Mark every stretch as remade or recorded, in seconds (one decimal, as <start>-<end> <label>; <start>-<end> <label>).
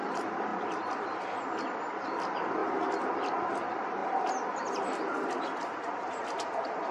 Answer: 0.0-0.5 remade; 0.5-1.7 recorded; 1.7-2.6 remade; 2.6-3.4 recorded; 3.4-4.0 remade; 4.0-5.9 recorded; 5.9-6.9 remade